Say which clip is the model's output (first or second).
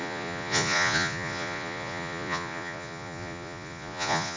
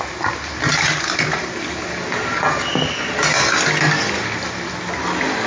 first